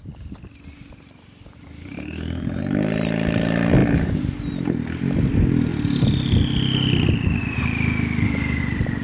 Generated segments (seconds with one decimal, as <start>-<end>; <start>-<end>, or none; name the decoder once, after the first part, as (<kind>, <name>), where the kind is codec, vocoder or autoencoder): 0.7-2.6 (vocoder, BigVGAN v2); 3.8-4.4